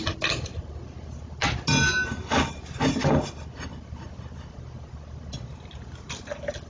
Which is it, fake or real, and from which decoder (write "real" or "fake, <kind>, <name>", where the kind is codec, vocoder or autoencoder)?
real